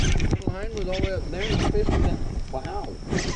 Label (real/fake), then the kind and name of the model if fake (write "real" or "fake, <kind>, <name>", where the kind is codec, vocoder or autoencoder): real